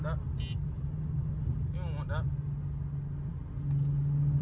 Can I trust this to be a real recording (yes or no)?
yes